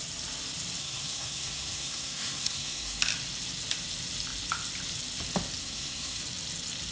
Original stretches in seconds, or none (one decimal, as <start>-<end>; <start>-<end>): 0.0-0.8; 3.0-5.6; 6.2-6.9